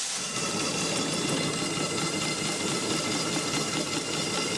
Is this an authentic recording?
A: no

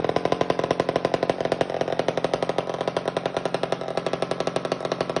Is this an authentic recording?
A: yes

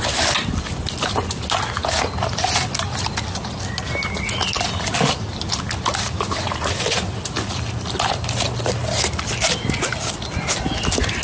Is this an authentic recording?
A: yes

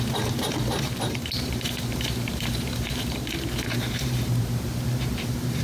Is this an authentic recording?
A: no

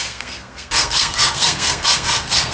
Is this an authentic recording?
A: no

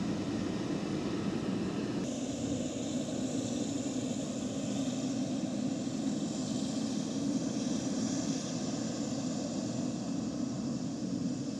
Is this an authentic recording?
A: yes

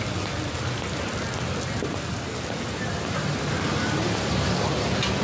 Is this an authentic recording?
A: yes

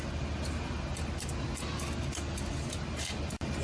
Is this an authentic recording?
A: yes